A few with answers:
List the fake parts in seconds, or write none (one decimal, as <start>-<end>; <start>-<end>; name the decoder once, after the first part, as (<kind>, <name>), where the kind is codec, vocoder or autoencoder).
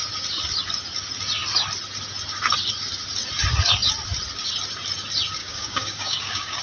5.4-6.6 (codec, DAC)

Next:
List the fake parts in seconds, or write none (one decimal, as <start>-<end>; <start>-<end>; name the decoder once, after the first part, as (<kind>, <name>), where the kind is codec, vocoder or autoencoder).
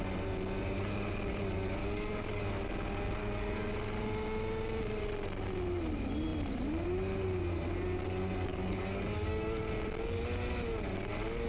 1.8-2.4 (codec, DAC); 3.2-3.7; 8.5-9.6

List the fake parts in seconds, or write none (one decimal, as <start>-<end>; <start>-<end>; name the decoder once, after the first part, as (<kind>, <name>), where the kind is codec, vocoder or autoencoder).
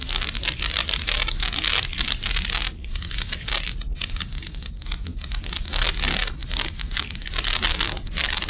2.8-3.5 (codec, DAC); 4.0-4.7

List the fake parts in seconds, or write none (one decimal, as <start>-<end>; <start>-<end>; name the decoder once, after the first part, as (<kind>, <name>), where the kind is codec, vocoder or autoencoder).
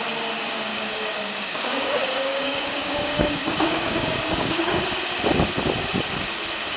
0.7-4.8 (codec, DAC)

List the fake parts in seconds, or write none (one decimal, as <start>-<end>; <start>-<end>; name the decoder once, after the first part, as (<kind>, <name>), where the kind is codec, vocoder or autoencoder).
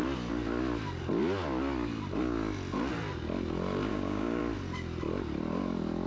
3.9-4.4 (codec, DAC)